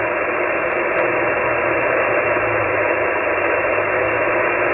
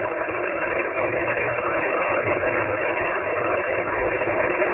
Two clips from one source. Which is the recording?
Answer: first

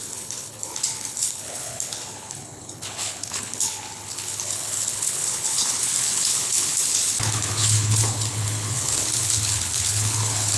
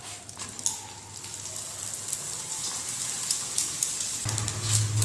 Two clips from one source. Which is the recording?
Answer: second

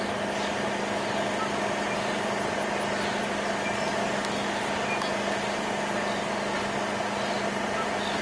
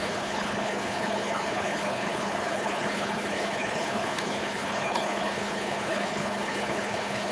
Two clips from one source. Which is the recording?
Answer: first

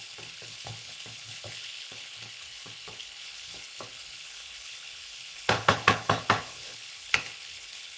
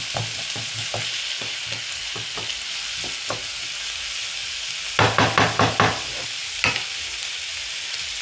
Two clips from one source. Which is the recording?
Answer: second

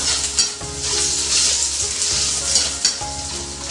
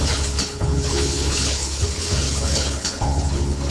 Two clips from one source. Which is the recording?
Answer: first